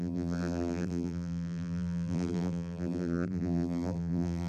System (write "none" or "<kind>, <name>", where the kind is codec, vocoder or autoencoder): vocoder, BigVGAN v2